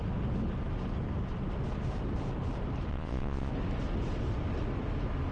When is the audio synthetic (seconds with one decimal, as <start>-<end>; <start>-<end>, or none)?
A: 2.9-3.5

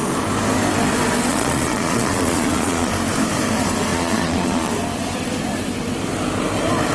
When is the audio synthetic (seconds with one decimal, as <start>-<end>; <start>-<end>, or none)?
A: 1.3-2.9; 3.9-4.7

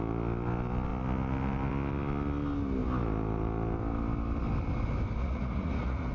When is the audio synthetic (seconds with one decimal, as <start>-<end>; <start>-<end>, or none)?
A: 5.2-6.1

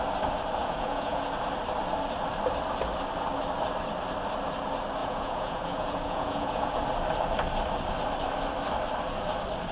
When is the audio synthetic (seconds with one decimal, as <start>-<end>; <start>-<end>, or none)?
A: 0.6-1.2; 5.0-6.8

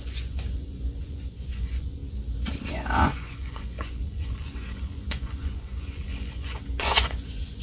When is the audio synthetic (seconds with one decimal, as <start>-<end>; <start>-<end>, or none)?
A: 0.0-2.0; 2.7-7.6

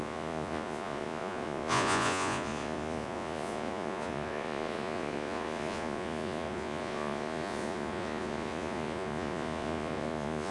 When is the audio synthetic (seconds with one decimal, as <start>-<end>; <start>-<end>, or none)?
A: 0.0-10.5

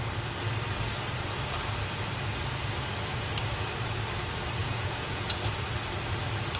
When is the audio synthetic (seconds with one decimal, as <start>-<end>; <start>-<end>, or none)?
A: 4.6-5.3